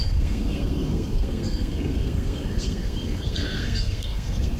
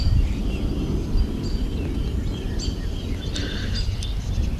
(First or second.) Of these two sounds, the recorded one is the second